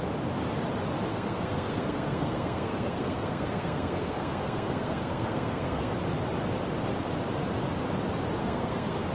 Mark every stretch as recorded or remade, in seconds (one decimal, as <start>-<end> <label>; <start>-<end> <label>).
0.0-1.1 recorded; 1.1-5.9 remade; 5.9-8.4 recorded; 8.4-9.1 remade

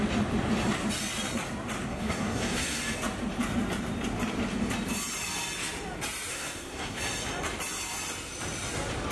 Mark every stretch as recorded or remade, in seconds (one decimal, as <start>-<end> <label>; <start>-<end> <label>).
0.0-1.9 recorded; 1.9-2.8 remade; 2.8-6.3 recorded; 6.3-7.0 remade; 7.0-9.1 recorded

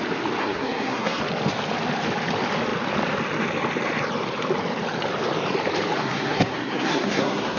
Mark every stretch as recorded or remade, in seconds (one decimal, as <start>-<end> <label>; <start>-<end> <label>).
0.0-0.4 recorded; 0.4-1.2 remade; 1.2-6.0 recorded; 6.0-7.6 remade